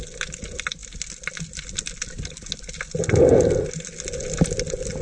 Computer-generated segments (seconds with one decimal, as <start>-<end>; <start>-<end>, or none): none